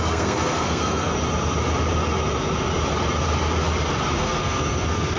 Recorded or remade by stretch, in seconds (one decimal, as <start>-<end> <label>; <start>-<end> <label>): 0.0-1.1 remade; 1.1-4.2 recorded; 4.2-5.2 remade